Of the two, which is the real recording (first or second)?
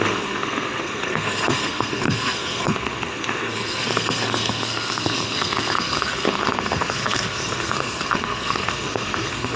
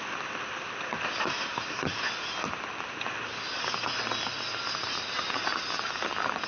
second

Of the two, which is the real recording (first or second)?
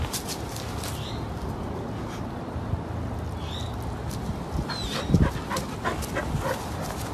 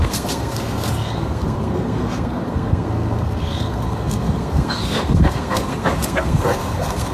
first